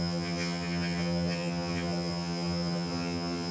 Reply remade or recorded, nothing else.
remade